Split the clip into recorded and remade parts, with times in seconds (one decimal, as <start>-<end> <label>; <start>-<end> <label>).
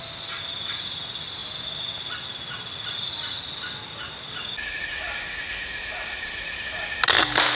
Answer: 0.0-7.5 recorded